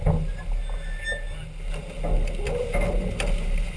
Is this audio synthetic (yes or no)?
no